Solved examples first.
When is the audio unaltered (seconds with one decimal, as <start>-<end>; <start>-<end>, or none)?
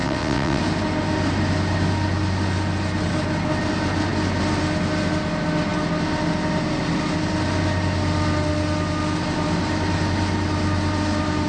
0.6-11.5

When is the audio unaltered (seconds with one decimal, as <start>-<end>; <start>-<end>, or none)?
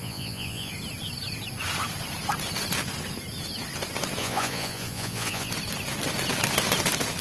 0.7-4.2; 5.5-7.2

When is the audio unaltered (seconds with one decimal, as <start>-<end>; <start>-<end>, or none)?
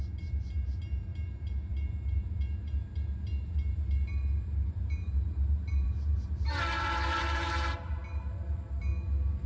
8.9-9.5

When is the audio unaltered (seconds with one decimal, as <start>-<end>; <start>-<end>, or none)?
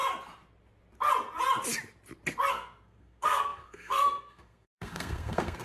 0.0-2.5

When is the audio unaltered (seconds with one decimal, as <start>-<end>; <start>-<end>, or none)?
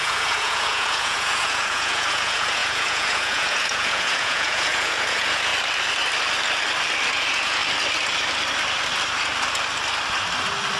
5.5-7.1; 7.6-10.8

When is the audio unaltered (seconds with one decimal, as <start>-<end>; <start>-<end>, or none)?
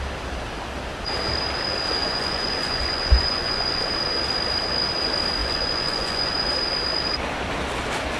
0.0-2.0; 3.8-5.4; 6.5-8.2